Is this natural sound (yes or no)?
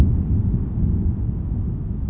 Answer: yes